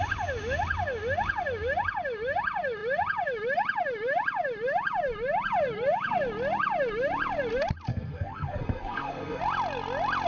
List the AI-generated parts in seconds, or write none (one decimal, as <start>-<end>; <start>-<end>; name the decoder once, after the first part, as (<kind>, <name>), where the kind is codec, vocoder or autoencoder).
7.9-9.4 (codec, SNAC)